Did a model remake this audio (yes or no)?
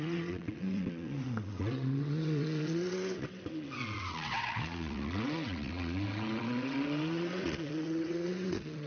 yes